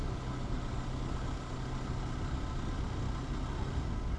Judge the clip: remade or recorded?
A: recorded